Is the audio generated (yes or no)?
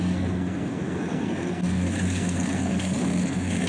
yes